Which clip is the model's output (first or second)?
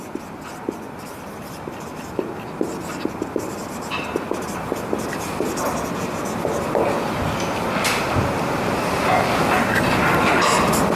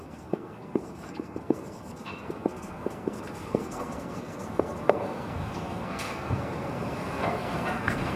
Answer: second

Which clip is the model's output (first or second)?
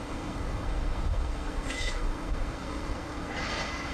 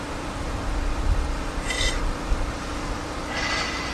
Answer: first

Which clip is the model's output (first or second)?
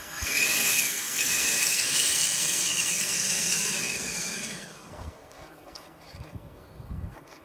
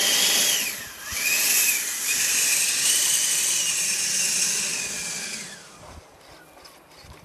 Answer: first